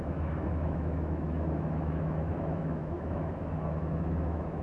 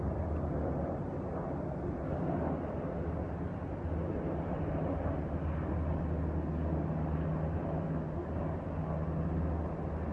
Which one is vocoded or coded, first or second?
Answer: first